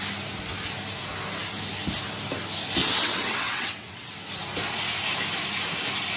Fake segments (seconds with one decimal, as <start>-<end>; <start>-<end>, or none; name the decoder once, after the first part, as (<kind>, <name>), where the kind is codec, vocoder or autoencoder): 2.8-4.1 (vocoder, WaveNeXt)